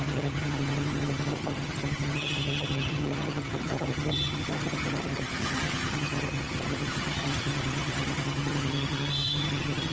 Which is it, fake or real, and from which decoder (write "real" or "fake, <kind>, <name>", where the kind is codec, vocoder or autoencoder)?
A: fake, vocoder, HiFi-GAN